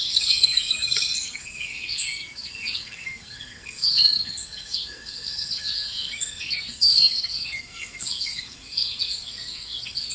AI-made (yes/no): yes